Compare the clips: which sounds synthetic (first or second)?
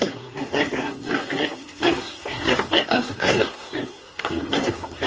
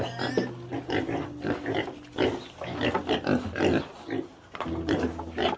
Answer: first